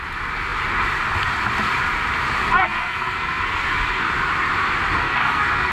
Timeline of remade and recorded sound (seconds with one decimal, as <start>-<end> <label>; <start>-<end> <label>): 0.0-2.4 recorded; 2.4-4.1 remade; 4.1-5.0 recorded; 5.0-5.7 remade